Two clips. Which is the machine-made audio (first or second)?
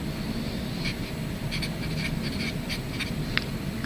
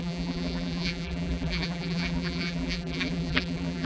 second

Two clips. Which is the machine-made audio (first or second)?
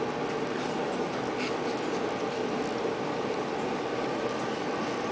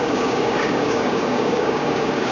second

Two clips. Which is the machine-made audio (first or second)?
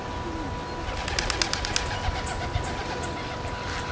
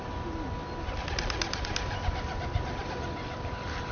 second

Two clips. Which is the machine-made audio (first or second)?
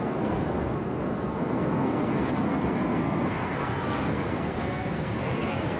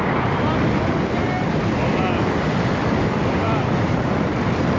first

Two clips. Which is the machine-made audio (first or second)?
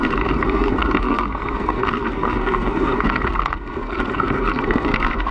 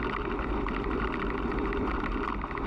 first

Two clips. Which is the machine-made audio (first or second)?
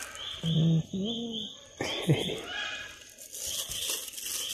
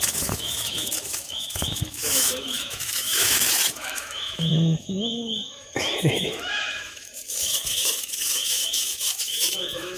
second